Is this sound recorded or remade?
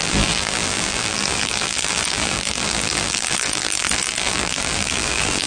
remade